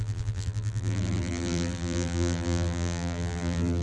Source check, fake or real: fake